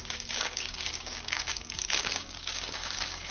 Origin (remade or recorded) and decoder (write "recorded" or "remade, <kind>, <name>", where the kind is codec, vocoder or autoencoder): remade, codec, DAC